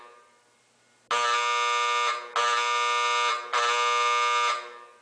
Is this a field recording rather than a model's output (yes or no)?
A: yes